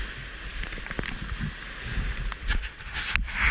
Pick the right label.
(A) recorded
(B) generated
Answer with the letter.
A